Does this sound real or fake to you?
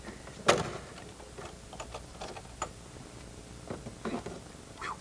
real